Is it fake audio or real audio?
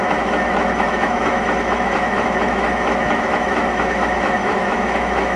fake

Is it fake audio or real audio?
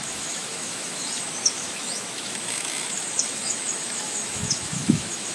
fake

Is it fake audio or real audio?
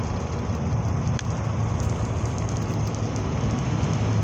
real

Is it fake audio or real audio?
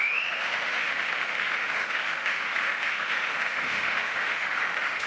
fake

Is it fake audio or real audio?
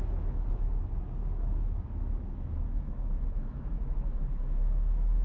fake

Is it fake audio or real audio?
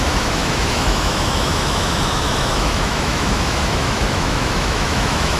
fake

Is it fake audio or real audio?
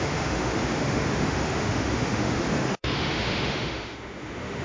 fake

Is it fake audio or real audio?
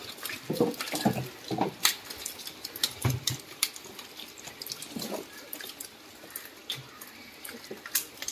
real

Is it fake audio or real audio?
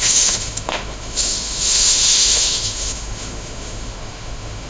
fake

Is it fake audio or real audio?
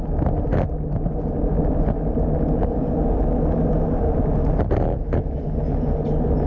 real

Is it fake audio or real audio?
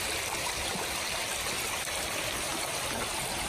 real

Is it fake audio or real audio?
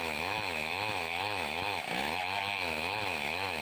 fake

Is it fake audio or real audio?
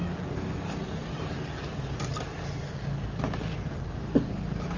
real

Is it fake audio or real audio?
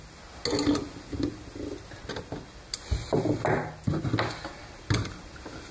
real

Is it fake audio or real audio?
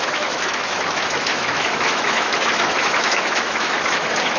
fake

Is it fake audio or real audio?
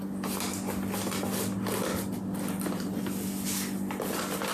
real